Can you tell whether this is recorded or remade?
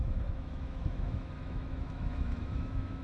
remade